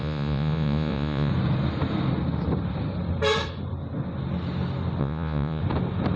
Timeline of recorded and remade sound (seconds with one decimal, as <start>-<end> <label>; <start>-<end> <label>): 0.0-1.3 remade; 1.3-5.0 recorded; 5.0-5.6 remade; 5.6-6.2 recorded